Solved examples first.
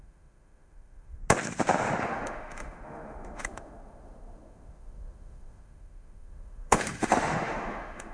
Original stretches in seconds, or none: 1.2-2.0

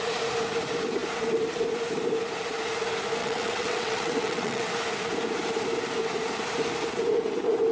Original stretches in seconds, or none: 0.0-3.2; 4.7-7.7

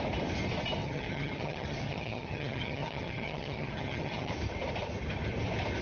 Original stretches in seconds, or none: 0.0-0.8; 4.3-5.8

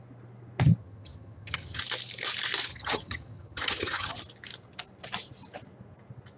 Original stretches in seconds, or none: 0.0-0.8; 1.8-2.7; 4.2-6.4